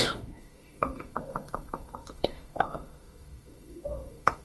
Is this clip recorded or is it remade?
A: remade